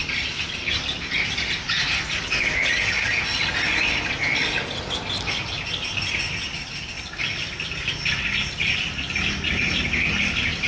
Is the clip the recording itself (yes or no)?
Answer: yes